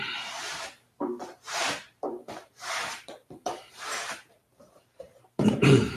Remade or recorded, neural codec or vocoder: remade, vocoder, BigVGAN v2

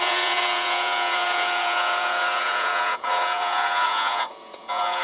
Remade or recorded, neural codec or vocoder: remade, vocoder, Vocos